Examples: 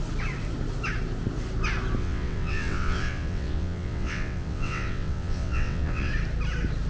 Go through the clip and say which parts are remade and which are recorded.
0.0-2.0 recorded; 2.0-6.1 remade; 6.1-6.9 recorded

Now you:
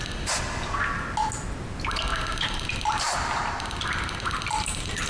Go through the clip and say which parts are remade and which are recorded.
0.0-2.1 recorded; 2.1-5.1 remade

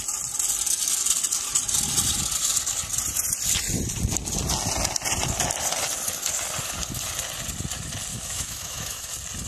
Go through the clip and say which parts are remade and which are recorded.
0.0-8.1 recorded; 8.1-9.1 remade; 9.1-9.5 recorded

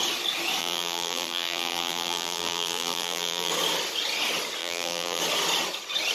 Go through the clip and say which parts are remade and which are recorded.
0.0-0.6 recorded; 0.6-3.5 remade; 3.5-4.6 recorded; 4.6-5.2 remade; 5.2-6.1 recorded

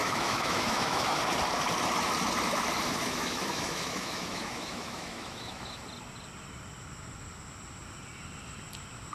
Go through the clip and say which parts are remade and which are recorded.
0.0-1.2 remade; 1.2-3.0 recorded; 3.0-5.8 remade; 5.8-9.1 recorded

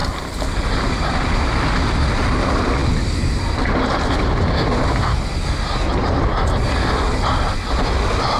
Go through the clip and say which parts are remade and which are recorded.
0.0-8.4 recorded

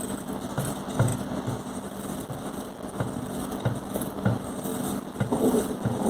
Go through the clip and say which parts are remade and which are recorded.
0.0-6.1 recorded